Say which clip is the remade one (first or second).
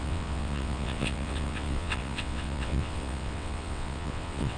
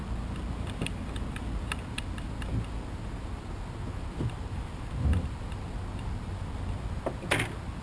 first